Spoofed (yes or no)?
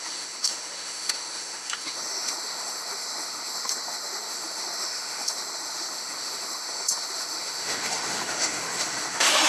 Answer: yes